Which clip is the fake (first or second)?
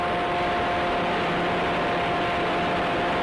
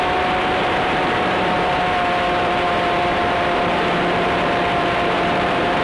second